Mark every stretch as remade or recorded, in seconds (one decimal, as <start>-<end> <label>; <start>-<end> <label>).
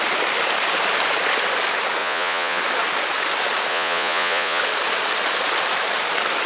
0.0-2.0 recorded; 2.0-2.6 remade; 2.6-3.7 recorded; 3.7-4.6 remade; 4.6-6.5 recorded